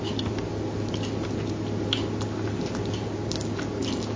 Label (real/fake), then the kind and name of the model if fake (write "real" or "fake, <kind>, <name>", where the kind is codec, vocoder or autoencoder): real